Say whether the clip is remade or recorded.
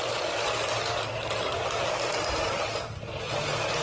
recorded